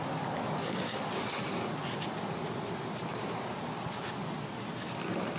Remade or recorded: recorded